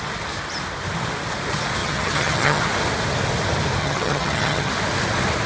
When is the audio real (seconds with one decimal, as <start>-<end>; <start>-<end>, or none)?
0.0-1.8; 2.6-3.8; 4.7-5.5

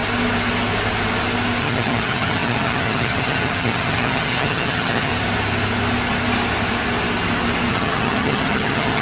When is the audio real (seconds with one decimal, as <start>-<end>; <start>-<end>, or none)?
0.0-1.6; 5.1-7.7

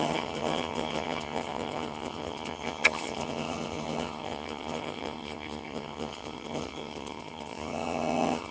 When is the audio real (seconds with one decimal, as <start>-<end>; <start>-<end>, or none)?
none

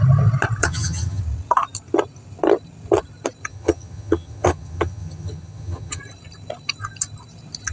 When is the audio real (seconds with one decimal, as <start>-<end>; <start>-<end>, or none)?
0.0-0.6; 1.2-3.5; 6.0-7.7

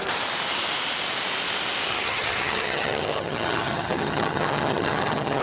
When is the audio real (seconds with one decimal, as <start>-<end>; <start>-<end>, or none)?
0.0-1.9